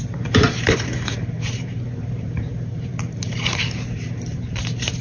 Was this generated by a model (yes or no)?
yes